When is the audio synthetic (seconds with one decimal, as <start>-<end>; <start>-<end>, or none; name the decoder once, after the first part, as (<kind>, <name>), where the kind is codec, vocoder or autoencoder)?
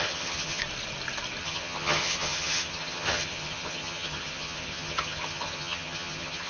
0.0-0.6 (vocoder, HiFi-GAN); 1.4-6.5